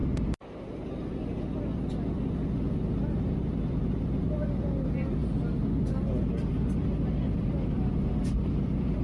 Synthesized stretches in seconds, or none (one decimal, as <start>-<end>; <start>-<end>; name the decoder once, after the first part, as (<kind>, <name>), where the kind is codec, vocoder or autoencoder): none